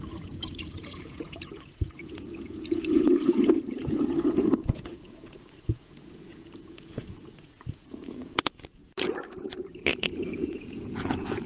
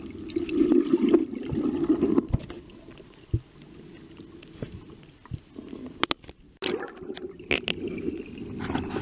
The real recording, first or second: second